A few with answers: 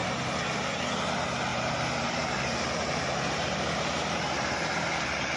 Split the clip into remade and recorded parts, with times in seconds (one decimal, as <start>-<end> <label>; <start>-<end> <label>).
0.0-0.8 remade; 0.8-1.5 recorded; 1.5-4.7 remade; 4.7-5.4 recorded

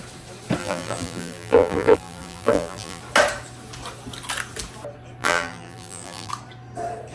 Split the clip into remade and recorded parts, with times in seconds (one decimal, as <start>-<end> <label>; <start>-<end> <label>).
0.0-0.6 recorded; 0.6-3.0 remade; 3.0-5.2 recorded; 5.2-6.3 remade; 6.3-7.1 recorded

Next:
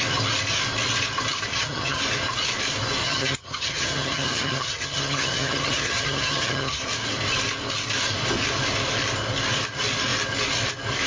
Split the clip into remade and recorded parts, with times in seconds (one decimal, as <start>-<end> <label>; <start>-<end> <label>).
0.0-1.5 recorded; 1.5-2.0 remade; 2.0-3.0 recorded; 3.0-6.8 remade; 6.8-11.1 recorded